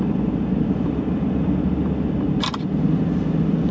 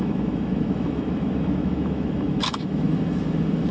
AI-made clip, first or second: second